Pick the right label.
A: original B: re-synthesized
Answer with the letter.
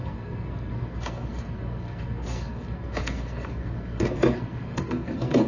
B